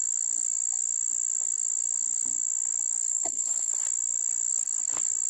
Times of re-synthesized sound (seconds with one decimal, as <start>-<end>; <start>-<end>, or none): 3.1-3.7